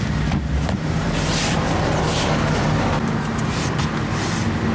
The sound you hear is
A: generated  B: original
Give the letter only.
B